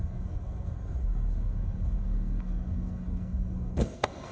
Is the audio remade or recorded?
remade